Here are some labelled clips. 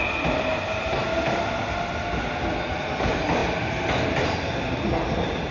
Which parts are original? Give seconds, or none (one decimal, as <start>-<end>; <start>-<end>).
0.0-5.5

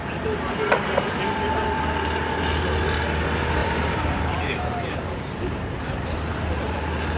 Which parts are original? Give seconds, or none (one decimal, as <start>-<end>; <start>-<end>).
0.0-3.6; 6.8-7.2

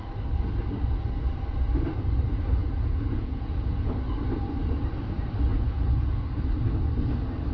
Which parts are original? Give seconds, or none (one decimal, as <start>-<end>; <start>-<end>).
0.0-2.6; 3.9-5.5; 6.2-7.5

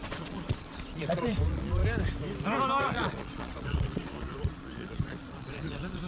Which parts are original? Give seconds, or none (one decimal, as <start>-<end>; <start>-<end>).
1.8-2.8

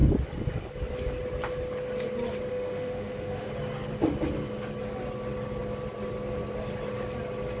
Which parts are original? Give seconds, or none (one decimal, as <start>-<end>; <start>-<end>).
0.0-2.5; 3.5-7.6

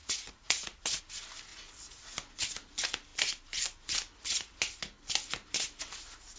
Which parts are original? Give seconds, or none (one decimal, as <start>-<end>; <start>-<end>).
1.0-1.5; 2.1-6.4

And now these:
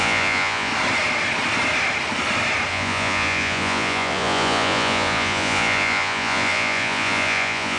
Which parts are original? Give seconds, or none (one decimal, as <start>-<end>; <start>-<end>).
0.7-2.7